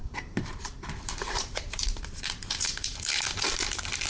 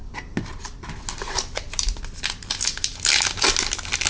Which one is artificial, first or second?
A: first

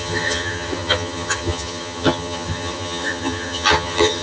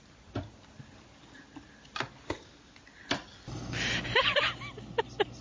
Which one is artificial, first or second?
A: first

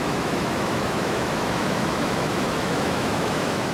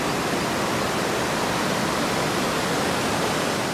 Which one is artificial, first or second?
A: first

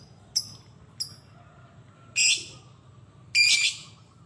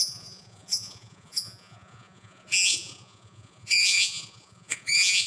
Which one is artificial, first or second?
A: second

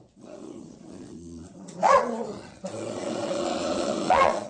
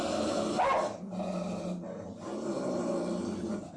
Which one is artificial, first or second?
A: first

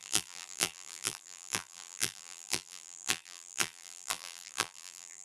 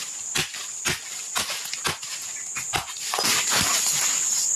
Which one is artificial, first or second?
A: first